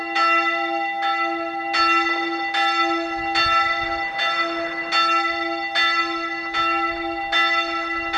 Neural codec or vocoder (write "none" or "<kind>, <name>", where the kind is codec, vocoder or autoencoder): none